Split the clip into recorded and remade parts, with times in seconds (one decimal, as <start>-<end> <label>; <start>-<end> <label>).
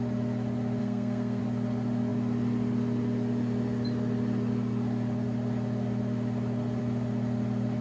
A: 0.0-0.8 recorded; 0.8-1.4 remade; 1.4-7.8 recorded